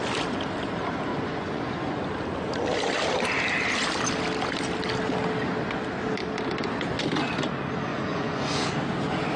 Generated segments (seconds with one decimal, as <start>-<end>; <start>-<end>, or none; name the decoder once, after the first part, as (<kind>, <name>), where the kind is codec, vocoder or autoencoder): 1.1-2.0 (vocoder, Vocos); 7.9-8.7